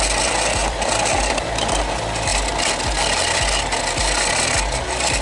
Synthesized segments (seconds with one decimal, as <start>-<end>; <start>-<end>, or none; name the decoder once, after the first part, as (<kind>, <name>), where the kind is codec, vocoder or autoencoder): 0.6-1.8 (vocoder, BigVGAN v2)